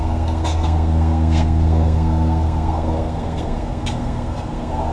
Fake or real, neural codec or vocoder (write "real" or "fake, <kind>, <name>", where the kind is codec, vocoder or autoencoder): fake, codec, SNAC